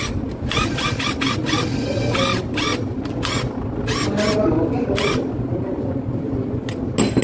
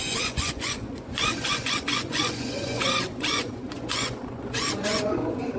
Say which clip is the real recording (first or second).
first